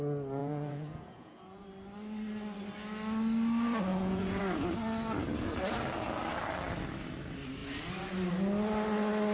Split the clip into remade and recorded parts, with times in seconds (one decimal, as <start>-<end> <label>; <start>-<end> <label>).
0.0-0.4 recorded; 0.4-1.6 remade; 1.6-3.9 recorded; 3.9-4.4 remade; 4.4-9.3 recorded